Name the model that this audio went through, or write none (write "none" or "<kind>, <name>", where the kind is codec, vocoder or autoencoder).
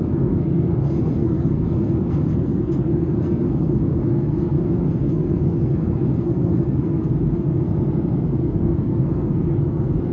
codec, SNAC